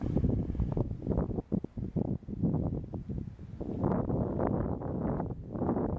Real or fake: real